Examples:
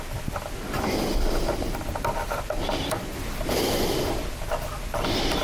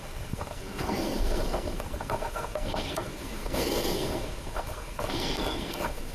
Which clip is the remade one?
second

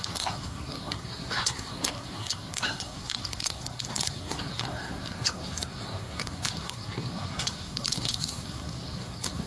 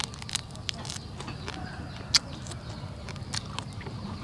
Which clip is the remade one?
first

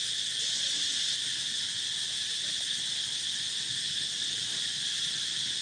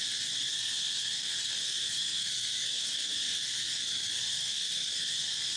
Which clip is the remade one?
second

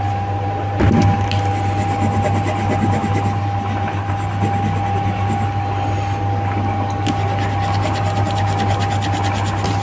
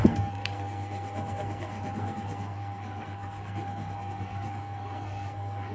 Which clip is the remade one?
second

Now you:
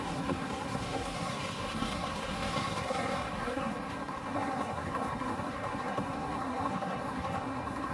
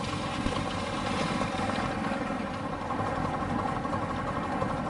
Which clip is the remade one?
first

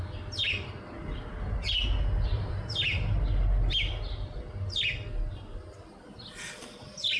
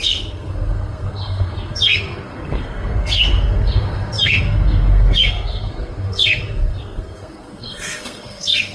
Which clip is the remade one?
second